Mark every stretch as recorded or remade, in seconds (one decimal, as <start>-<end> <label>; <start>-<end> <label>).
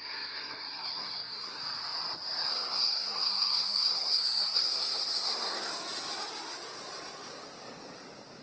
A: 0.0-1.6 remade; 1.6-2.5 recorded; 2.5-5.7 remade; 5.7-8.4 recorded